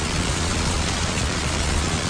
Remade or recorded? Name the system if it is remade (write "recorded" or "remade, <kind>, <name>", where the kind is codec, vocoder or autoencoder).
remade, vocoder, Vocos